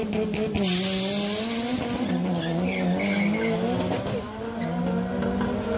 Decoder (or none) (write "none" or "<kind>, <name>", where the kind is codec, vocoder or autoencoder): none